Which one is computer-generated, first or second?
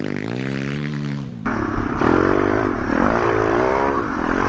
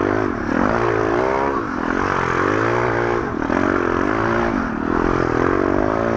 first